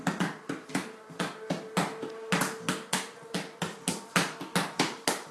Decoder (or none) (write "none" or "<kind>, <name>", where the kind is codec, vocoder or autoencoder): none